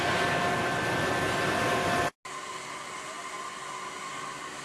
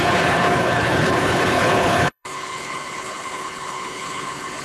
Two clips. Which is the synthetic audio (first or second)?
second